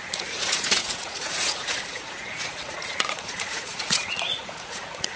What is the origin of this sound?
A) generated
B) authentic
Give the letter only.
A